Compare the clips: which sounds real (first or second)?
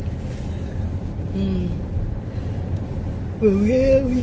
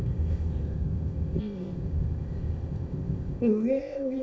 first